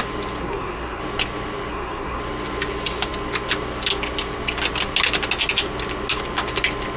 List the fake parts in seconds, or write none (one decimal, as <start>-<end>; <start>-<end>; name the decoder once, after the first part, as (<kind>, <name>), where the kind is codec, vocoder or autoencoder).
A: 0.4-1.0 (codec, SNAC); 1.7-2.2